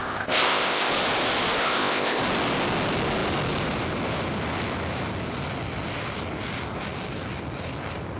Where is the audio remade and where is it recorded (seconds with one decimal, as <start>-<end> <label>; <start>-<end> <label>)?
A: 0.0-0.9 remade; 0.9-1.6 recorded; 1.6-2.2 remade; 2.2-8.2 recorded